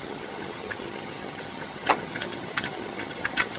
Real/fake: fake